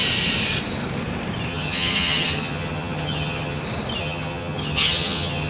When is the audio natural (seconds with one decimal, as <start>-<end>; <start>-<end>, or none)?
0.0-1.5; 3.6-4.0